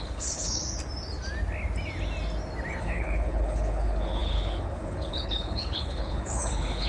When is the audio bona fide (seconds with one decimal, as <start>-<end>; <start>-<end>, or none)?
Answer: 0.6-2.8